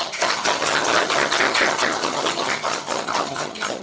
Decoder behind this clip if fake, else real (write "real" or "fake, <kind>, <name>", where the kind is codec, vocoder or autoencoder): fake, vocoder, HiFi-GAN